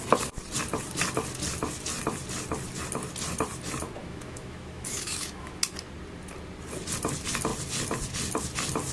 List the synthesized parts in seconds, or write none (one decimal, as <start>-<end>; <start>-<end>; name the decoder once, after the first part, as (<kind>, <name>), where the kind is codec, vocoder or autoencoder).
4.0-5.6 (autoencoder, DAC-VAE)

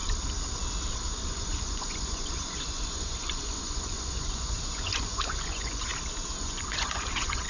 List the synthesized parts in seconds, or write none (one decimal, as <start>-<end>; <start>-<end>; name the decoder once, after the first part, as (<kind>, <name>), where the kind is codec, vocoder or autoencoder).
1.1-5.9 (vocoder, Vocos); 6.4-7.5